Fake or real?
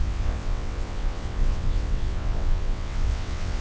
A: fake